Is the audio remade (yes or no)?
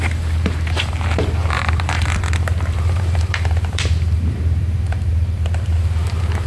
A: yes